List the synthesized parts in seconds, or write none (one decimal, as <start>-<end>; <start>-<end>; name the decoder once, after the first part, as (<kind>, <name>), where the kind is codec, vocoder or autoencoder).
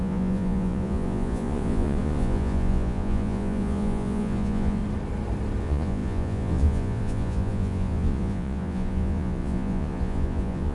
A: 0.0-4.8 (vocoder, Vocos); 5.6-10.7